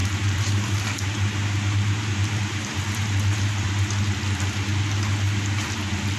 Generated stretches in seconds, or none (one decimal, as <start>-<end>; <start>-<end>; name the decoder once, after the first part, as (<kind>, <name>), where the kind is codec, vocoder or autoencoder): 0.0-3.7 (vocoder, BigVGAN v2)